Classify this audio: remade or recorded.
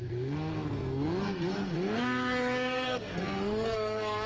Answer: remade